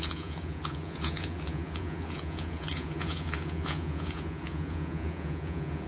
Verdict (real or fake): fake